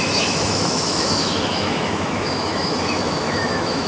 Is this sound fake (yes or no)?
yes